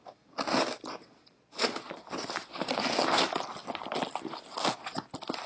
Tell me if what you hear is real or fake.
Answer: real